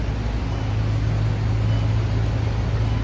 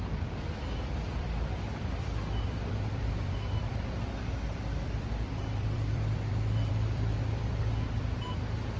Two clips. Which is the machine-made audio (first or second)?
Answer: second